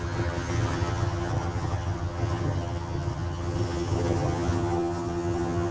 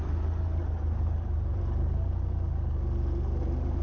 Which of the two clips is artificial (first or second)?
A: first